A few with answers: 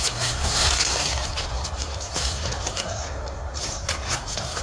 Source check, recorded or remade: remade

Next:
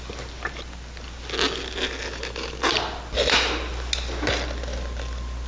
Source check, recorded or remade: recorded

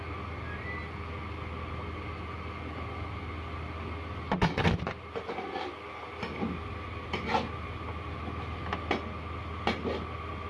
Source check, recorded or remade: recorded